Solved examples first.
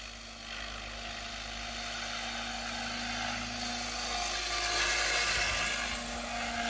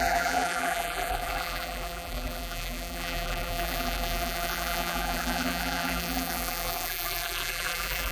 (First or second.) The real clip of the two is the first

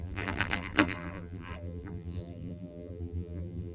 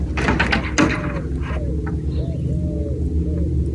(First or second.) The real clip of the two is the second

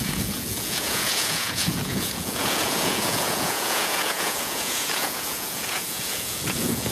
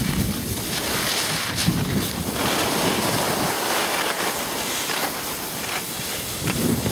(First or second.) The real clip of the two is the second